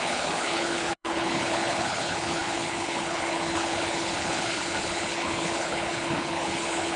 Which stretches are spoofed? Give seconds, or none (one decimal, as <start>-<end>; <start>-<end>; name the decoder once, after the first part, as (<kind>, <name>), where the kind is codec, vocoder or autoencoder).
0.0-7.0 (codec, HILCodec)